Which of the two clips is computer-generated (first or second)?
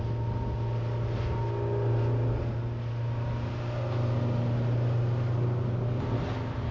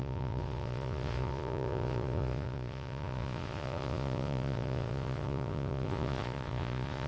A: second